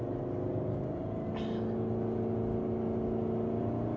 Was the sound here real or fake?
real